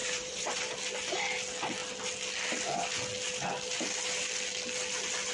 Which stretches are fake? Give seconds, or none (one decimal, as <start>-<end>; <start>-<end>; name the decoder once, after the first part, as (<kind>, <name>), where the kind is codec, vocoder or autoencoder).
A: 0.0-0.6 (vocoder, BigVGAN v2)